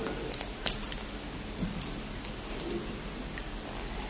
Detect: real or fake real